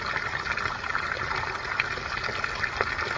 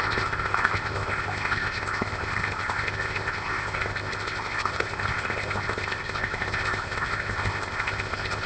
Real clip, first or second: first